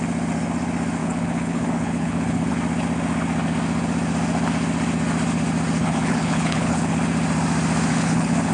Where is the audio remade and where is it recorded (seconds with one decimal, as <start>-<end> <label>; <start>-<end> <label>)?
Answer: 0.0-1.0 recorded; 1.0-2.5 remade; 2.5-5.8 recorded; 5.8-6.9 remade; 6.9-7.9 recorded; 7.9-8.5 remade